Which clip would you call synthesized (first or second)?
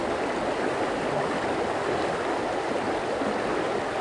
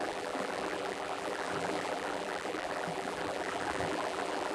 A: second